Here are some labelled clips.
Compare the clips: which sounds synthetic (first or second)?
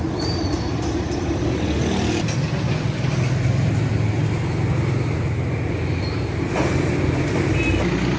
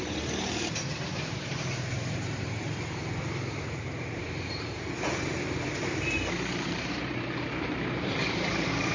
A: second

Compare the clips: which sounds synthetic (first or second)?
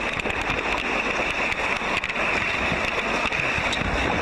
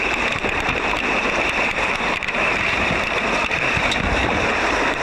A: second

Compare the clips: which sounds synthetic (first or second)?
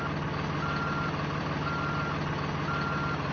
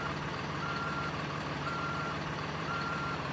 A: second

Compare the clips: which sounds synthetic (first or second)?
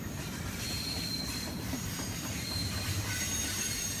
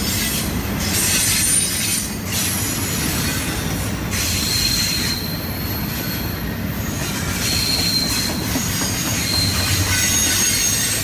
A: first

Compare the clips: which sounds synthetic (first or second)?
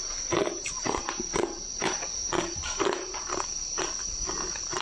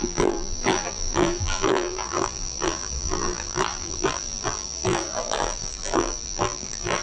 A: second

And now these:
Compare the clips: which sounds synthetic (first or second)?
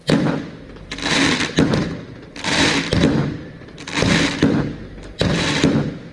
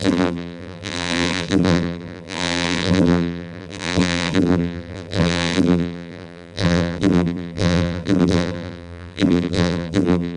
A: second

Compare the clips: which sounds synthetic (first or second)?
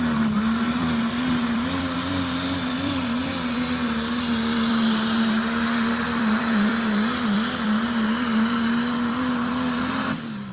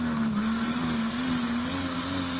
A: first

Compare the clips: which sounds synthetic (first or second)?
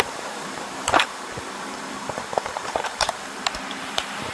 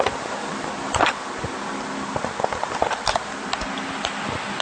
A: first